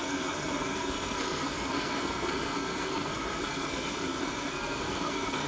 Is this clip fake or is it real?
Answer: fake